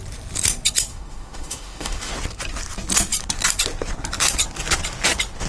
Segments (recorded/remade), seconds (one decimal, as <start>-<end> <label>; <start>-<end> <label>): 0.0-0.9 recorded; 0.9-2.1 remade; 2.1-5.5 recorded